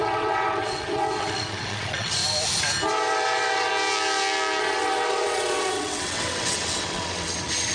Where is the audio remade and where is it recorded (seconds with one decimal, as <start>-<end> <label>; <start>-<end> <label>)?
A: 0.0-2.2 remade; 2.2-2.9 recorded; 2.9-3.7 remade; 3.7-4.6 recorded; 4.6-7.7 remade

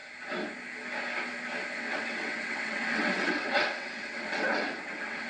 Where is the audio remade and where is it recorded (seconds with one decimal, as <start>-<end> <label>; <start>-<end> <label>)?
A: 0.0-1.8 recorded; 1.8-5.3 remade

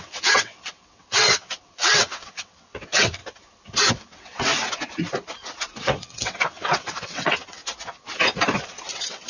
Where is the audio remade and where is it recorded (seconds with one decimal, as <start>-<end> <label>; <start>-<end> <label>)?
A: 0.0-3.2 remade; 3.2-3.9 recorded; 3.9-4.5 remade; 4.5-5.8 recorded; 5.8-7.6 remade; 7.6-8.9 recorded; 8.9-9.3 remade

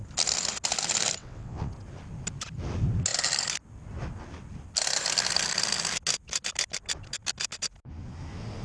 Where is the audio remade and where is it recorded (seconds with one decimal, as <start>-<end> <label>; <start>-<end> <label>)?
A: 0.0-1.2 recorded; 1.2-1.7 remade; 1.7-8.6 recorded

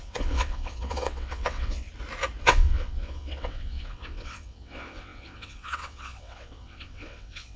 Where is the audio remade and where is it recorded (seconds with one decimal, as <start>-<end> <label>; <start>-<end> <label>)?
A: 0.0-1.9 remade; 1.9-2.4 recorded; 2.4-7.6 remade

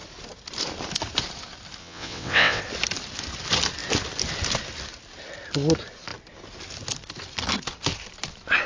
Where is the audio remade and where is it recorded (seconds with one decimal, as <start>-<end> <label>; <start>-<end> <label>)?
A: 0.0-1.8 recorded; 1.8-2.6 remade; 2.6-8.7 recorded

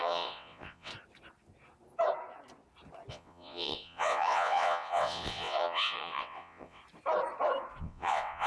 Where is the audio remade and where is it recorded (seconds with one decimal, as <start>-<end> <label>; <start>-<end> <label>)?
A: 0.0-0.9 remade; 0.9-3.1 recorded; 3.1-6.8 remade; 6.8-7.8 recorded; 7.8-8.5 remade